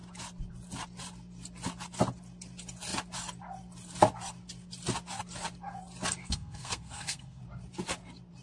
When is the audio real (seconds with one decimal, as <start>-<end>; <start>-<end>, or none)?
0.0-6.2; 7.4-8.4